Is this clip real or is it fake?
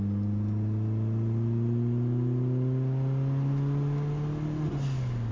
real